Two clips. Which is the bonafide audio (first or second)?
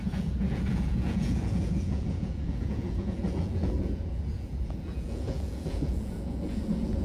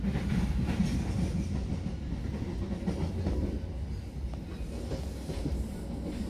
second